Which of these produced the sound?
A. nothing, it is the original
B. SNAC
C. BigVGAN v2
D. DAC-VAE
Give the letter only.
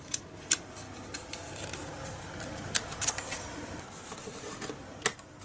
A